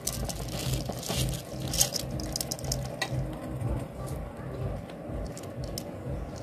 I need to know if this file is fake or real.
real